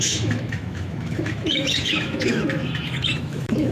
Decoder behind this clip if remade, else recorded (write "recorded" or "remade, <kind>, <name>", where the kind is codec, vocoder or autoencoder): remade, autoencoder, DAC-VAE